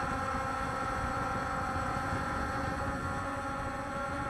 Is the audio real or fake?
fake